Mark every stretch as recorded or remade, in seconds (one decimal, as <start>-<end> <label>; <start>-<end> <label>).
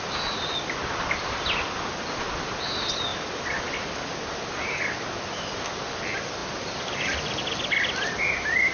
0.0-3.1 recorded; 3.1-4.0 remade; 4.0-6.4 recorded; 6.4-7.4 remade; 7.4-8.7 recorded